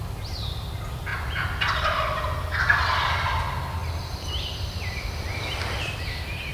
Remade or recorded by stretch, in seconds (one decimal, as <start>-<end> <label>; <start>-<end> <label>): 0.0-6.5 recorded